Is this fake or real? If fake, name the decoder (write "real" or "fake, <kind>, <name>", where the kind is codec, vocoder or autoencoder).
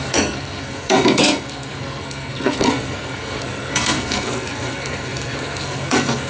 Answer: fake, codec, SNAC